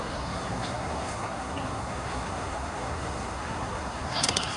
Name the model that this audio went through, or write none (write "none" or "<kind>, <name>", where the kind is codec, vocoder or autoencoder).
codec, SNAC